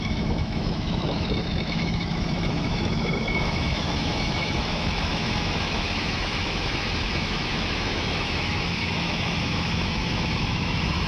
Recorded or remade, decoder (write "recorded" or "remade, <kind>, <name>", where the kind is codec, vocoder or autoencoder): remade, autoencoder, DAC-VAE